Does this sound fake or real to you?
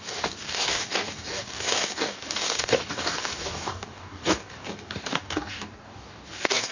fake